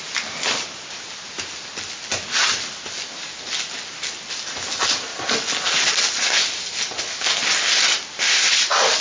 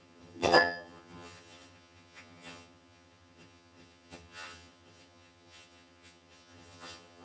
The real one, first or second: first